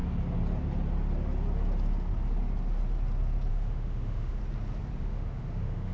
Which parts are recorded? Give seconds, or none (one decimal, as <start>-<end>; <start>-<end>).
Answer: 0.0-3.5; 4.4-5.0